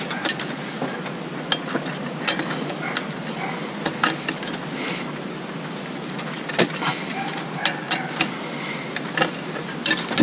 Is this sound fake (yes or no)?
no